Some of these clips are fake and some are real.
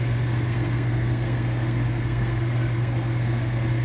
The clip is fake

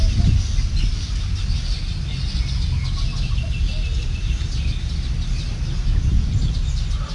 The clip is real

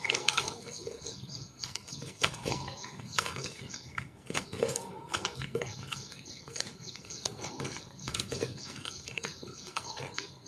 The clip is fake